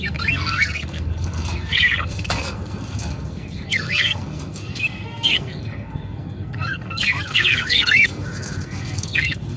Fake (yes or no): yes